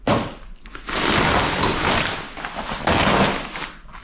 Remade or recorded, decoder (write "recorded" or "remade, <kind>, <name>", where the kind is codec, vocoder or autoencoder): recorded